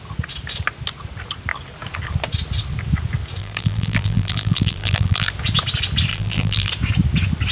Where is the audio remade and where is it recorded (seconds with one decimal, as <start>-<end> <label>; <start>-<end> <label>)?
0.0-3.4 recorded; 3.4-5.3 remade; 5.3-6.1 recorded; 6.1-6.7 remade; 6.7-7.5 recorded